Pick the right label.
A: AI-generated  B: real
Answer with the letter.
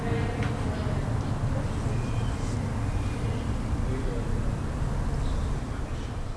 B